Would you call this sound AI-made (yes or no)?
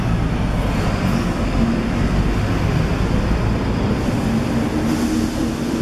no